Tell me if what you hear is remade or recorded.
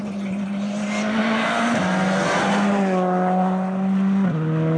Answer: recorded